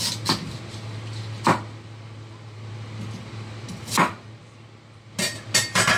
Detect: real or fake real